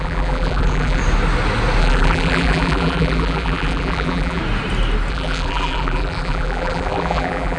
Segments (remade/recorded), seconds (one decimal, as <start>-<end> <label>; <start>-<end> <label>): 0.0-1.0 remade; 1.0-1.8 recorded; 1.8-4.4 remade; 4.4-5.1 recorded; 5.1-7.6 remade